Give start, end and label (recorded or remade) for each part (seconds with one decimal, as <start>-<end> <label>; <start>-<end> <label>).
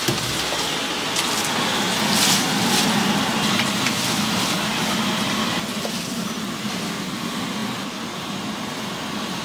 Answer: 0.0-9.4 recorded